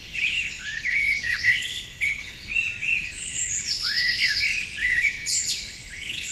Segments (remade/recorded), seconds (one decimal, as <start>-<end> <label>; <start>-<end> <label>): 0.0-2.5 remade; 2.5-3.0 recorded; 3.0-6.3 remade